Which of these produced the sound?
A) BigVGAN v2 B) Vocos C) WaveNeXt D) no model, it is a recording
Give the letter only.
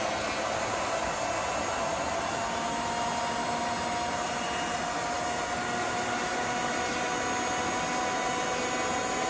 D